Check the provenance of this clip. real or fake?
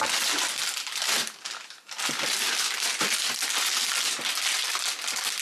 real